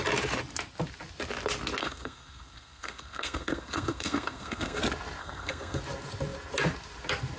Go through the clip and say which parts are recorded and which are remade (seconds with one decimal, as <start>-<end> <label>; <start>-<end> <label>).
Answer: 0.0-1.8 recorded; 1.8-4.8 remade; 4.8-5.2 recorded; 5.2-5.8 remade; 5.8-7.4 recorded

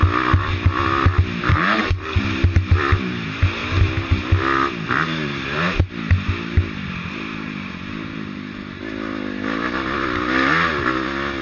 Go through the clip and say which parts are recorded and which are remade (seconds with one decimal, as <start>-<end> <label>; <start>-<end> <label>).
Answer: 0.0-1.5 recorded; 1.5-2.2 remade; 2.2-11.4 recorded

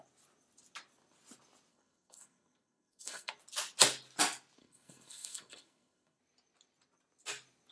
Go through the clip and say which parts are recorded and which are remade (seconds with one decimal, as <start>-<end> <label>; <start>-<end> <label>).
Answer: 0.0-1.7 recorded; 1.7-3.3 remade; 3.3-4.6 recorded; 4.6-6.2 remade; 6.2-7.7 recorded